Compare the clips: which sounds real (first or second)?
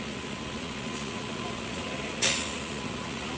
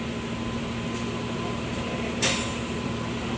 second